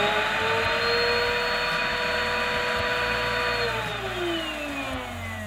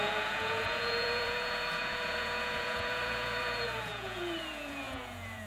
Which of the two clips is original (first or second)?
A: first